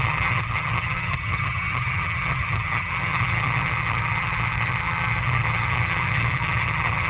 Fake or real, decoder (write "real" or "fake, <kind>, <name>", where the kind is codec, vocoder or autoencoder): fake, vocoder, HiFi-GAN